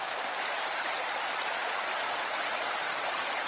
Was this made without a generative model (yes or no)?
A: yes